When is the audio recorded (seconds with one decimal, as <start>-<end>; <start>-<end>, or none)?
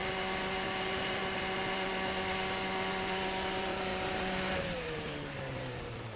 1.9-2.9